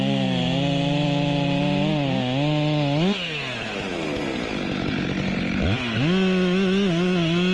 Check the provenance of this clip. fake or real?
real